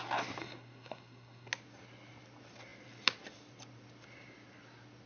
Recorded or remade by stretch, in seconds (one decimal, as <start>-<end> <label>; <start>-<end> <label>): 0.0-0.4 recorded; 0.4-1.5 remade; 1.5-5.1 recorded